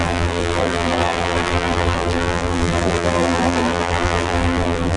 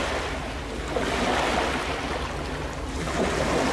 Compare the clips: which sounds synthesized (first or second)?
first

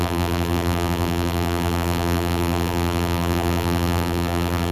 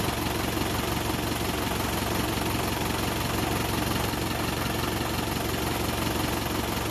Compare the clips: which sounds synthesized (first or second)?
first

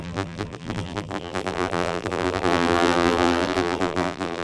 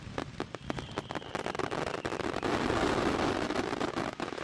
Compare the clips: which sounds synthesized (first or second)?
first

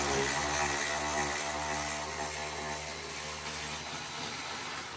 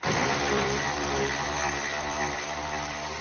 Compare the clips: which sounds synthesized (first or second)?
second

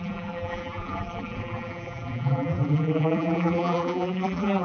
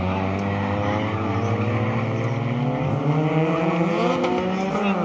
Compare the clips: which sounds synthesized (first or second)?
first